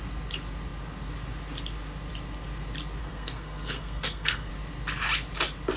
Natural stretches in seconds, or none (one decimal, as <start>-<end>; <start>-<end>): 0.0-3.0; 4.5-5.8